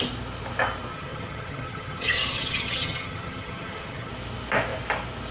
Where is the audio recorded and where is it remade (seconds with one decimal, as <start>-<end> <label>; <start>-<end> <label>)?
0.0-0.9 recorded; 0.9-4.1 remade; 4.1-5.3 recorded